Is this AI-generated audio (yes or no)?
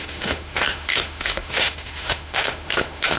yes